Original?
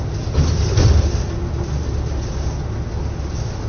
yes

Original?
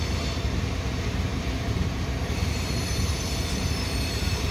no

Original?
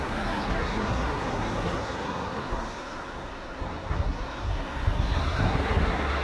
no